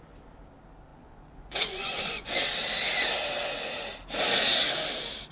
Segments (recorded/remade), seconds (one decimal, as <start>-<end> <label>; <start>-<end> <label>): 0.0-0.9 recorded; 0.9-2.4 remade; 2.4-5.3 recorded